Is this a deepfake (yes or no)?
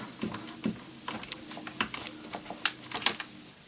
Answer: no